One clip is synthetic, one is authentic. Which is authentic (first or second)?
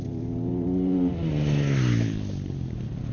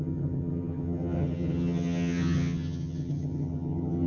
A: first